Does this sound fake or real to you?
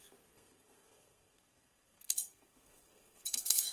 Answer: fake